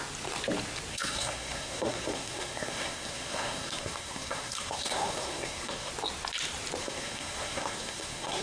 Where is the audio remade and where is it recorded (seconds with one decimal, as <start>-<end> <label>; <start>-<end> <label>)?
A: 0.0-0.9 recorded; 0.9-5.9 remade; 5.9-6.8 recorded; 6.8-8.4 remade